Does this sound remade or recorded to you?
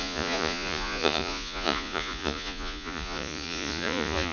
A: remade